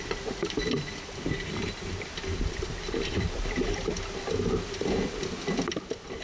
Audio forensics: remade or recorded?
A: recorded